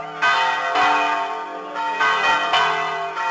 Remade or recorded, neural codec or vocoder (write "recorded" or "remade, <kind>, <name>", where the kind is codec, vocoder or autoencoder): recorded